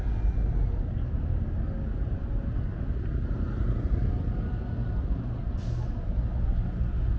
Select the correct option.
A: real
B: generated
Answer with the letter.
A